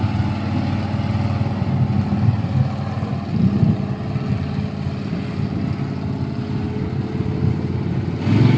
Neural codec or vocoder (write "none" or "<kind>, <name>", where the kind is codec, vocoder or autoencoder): none